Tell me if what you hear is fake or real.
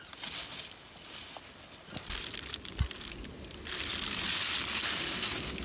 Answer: real